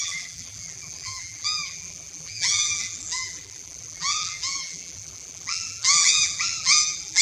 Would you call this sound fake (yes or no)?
yes